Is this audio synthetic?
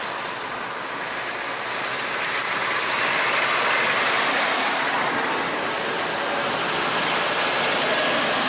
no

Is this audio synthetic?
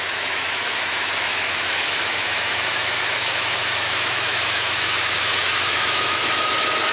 yes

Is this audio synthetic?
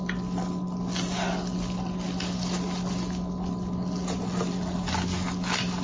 no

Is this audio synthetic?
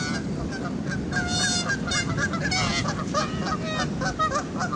no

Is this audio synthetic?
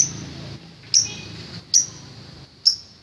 no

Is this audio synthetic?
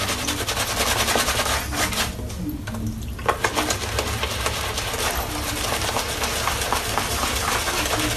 no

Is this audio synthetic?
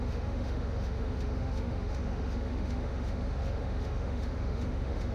yes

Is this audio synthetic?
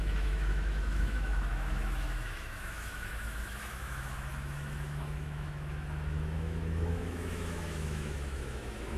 yes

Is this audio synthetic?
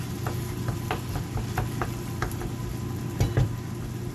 no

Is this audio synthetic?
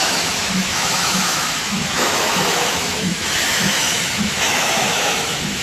yes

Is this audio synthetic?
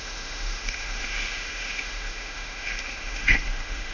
yes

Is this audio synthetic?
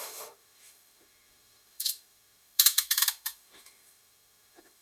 yes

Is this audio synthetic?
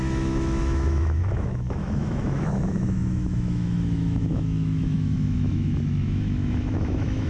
yes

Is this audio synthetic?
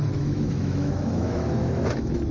yes